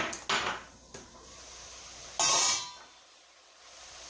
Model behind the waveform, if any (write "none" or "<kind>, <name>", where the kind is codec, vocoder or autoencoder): none